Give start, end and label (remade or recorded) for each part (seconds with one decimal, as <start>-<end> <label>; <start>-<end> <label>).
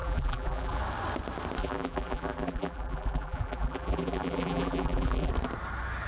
0.0-0.8 remade; 0.8-1.6 recorded; 1.6-5.3 remade; 5.3-6.1 recorded